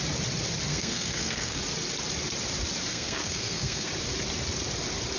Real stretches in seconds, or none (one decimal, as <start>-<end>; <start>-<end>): 0.0-0.7; 1.6-2.9; 3.9-5.2